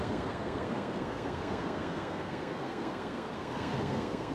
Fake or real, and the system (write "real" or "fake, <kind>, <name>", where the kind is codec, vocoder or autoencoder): fake, codec, SNAC